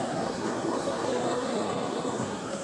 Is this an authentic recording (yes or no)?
no